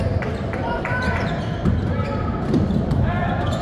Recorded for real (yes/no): no